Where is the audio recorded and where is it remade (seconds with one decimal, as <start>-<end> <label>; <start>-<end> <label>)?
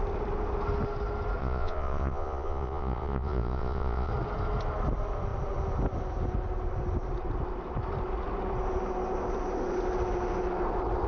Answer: 0.0-1.4 recorded; 1.4-4.1 remade; 4.1-11.1 recorded